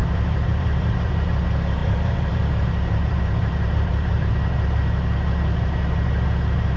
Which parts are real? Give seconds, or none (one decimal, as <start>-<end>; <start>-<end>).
1.3-1.8; 4.3-6.8